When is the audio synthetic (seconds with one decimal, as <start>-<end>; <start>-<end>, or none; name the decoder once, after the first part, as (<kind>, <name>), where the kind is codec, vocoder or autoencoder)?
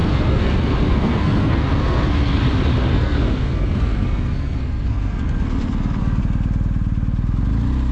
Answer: 0.0-2.4 (codec, SNAC); 2.9-6.2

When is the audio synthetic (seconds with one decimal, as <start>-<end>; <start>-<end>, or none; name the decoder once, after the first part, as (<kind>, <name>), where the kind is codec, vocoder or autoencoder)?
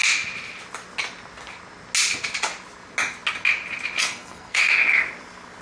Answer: 4.0-4.6 (codec, SNAC)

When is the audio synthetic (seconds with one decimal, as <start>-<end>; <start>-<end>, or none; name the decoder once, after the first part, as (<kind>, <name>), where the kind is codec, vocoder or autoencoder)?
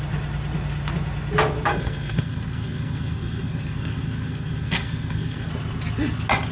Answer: 1.7-5.5 (codec, SNAC)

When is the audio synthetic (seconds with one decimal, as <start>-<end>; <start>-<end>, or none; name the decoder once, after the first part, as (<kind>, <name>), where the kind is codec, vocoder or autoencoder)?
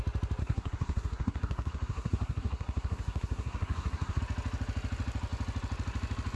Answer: 0.4-4.2 (codec, SNAC)